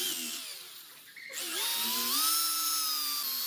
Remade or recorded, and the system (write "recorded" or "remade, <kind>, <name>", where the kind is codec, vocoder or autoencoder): recorded